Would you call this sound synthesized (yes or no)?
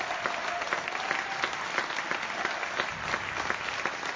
no